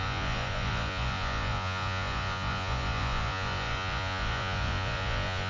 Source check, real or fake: fake